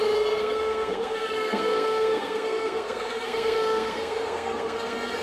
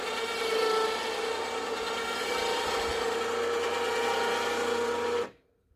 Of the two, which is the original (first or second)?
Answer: second